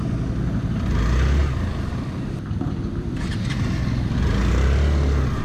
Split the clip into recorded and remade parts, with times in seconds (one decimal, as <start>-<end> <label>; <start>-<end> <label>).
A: 0.0-1.4 recorded; 1.4-3.7 remade; 3.7-5.4 recorded

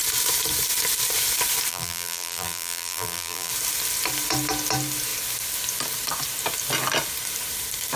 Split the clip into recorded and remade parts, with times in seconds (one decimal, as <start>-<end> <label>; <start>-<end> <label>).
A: 0.0-1.7 recorded; 1.7-3.5 remade; 3.5-8.0 recorded

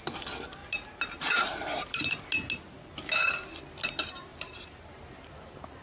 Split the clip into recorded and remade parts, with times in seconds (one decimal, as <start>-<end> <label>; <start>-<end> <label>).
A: 0.0-0.6 recorded; 0.6-2.0 remade; 2.0-4.3 recorded; 4.3-5.0 remade; 5.0-5.8 recorded

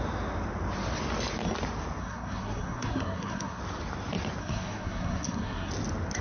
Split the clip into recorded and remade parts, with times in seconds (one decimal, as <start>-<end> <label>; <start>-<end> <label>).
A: 0.0-2.0 recorded; 2.0-3.6 remade; 3.6-4.4 recorded; 4.4-5.7 remade; 5.7-6.2 recorded

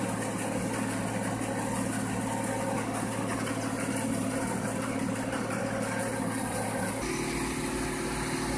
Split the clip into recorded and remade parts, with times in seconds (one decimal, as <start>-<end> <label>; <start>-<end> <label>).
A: 0.0-3.3 recorded; 3.3-5.6 remade; 5.6-6.1 recorded; 6.1-6.9 remade; 6.9-8.6 recorded

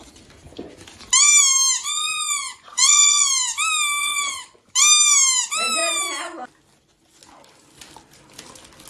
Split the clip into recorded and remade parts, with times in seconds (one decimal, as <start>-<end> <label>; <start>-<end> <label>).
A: 0.0-1.8 recorded; 1.8-3.3 remade; 3.3-4.0 recorded; 4.0-4.7 remade; 4.7-8.9 recorded